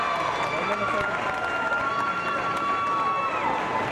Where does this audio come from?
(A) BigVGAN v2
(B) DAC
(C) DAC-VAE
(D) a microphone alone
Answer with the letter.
D